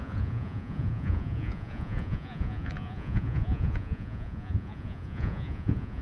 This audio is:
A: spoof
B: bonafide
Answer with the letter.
A